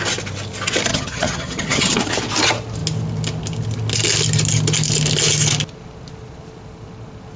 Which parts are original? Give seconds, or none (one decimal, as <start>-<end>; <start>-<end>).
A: 0.0-0.9; 2.0-7.4